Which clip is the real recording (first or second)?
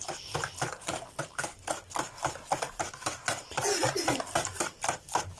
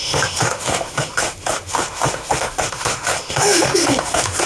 first